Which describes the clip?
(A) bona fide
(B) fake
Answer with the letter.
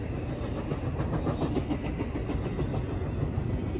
A